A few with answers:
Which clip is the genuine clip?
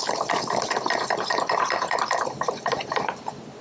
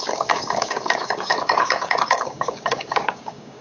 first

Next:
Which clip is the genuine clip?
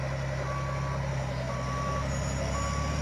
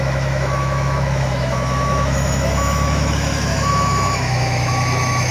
first